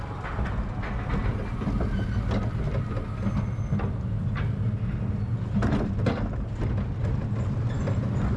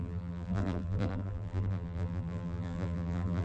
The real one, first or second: first